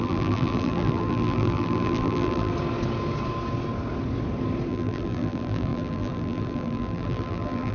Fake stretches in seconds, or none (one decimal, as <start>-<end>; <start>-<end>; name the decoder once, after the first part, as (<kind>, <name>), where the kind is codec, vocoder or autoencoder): 0.0-2.5 (vocoder, BigVGAN v2); 4.7-7.7

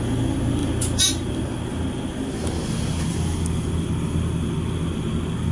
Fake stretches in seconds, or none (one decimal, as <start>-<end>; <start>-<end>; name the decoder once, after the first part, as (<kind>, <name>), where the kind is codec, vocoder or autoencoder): none

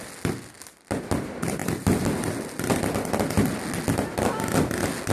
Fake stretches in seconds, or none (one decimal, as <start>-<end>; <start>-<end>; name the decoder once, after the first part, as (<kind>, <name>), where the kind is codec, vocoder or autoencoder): none

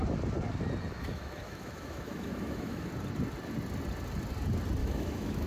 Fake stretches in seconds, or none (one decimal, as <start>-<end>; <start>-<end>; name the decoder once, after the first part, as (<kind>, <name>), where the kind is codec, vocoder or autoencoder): 0.9-2.9 (autoencoder, DAC-VAE); 4.8-5.5

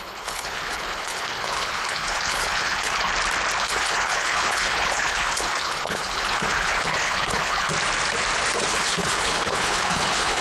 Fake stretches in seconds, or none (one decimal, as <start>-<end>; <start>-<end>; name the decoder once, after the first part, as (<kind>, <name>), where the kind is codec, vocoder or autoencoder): 0.0-3.1 (codec, HILCodec); 3.6-7.7; 8.7-10.4

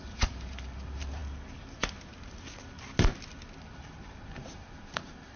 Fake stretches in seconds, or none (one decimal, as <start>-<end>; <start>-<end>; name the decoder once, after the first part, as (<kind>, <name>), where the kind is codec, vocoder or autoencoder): 0.0-1.2 (vocoder, BigVGAN v2); 3.6-5.4